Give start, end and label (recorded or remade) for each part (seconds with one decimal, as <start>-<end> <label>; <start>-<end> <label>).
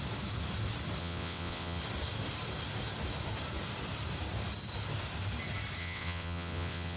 0.0-1.0 recorded; 1.0-1.8 remade; 1.8-5.8 recorded; 5.8-7.0 remade